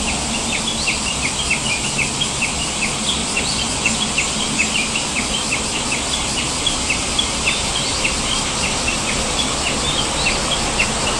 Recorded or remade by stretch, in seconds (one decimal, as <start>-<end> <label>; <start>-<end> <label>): 0.0-3.2 recorded; 3.2-4.1 remade; 4.1-11.2 recorded